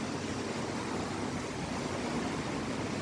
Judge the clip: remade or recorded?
recorded